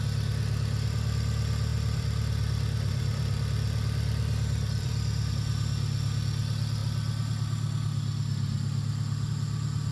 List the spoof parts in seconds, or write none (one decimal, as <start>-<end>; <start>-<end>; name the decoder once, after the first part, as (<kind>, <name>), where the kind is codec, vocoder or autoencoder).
1.7-5.3 (vocoder, BigVGAN v2)

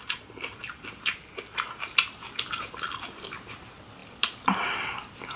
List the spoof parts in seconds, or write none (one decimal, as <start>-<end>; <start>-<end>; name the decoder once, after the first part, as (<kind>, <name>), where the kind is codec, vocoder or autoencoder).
none

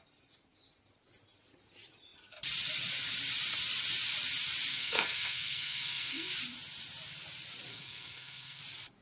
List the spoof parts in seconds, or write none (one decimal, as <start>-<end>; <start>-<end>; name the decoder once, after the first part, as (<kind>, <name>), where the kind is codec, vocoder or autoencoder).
4.7-6.3 (codec, SNAC); 7.7-8.6

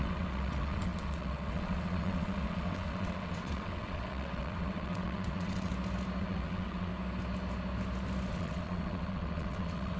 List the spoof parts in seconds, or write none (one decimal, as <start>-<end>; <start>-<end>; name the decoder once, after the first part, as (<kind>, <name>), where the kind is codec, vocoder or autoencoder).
0.0-5.7 (vocoder, WaveNeXt); 6.2-6.9; 8.3-10.0

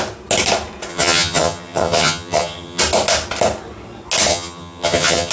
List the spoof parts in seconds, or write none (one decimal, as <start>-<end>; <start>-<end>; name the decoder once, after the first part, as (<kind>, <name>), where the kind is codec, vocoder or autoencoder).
0.9-2.8 (vocoder, HiFi-GAN); 4.3-5.3

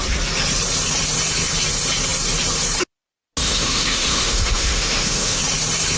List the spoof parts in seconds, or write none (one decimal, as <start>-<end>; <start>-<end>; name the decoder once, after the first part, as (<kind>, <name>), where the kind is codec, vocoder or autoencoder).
3.4-5.4 (autoencoder, DAC-VAE)

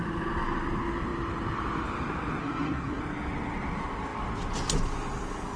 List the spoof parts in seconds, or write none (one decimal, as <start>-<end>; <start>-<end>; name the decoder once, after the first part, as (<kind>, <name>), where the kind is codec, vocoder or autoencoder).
2.4-3.0 (codec, SNAC)

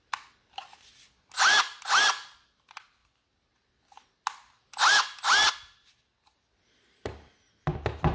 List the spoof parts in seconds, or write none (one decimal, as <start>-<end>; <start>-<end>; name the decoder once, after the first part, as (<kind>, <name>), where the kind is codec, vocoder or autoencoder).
none